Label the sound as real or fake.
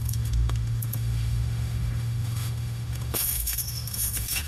fake